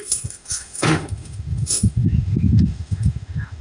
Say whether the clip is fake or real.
fake